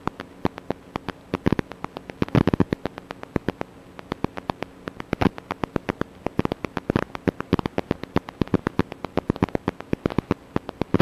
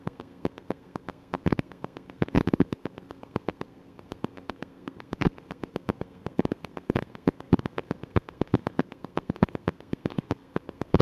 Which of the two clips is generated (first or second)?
second